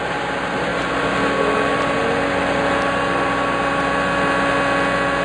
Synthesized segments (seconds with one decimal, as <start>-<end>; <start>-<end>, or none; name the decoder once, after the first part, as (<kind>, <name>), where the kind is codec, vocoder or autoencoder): none